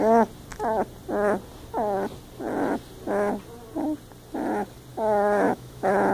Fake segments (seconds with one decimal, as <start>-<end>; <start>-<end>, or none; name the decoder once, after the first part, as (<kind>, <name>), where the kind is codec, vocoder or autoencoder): 4.9-6.1 (autoencoder, DAC-VAE)